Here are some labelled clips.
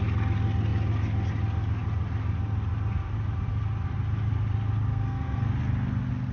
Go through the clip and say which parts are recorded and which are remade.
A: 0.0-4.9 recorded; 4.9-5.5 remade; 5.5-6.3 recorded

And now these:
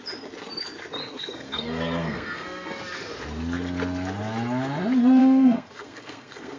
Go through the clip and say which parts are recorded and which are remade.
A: 0.0-1.1 recorded; 1.1-2.8 remade; 2.8-5.2 recorded; 5.2-6.6 remade

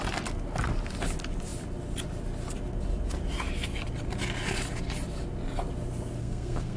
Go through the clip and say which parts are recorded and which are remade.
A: 0.0-6.2 recorded; 6.2-6.8 remade

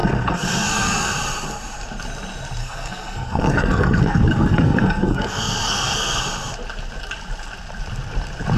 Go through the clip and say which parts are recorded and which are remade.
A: 0.0-1.1 remade; 1.1-2.6 recorded; 2.6-6.2 remade; 6.2-8.6 recorded

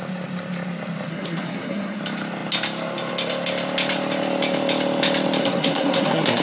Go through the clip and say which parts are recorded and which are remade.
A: 0.0-1.1 recorded; 1.1-2.0 remade; 2.0-5.4 recorded; 5.4-6.4 remade

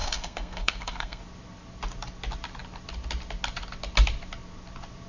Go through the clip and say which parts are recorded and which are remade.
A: 0.0-1.2 remade; 1.2-5.1 recorded